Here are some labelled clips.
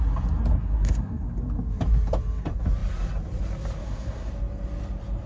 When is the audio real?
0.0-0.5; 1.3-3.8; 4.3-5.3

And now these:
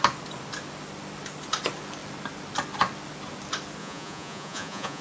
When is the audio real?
0.0-3.8

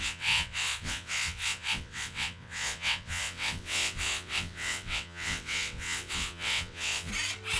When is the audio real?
7.1-7.6

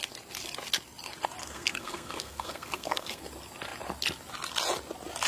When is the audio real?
0.0-1.4; 3.2-5.3

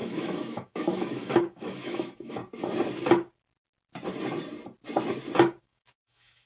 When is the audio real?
2.4-5.6